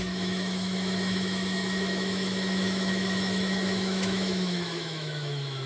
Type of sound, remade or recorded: remade